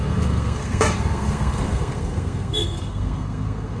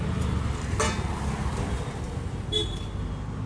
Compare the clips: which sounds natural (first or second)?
second